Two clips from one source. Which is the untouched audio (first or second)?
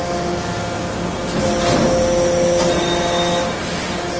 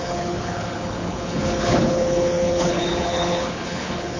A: first